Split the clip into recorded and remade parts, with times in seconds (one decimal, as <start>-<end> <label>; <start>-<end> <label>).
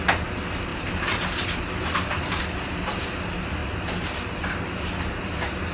0.0-0.7 recorded; 0.7-3.2 remade; 3.2-5.7 recorded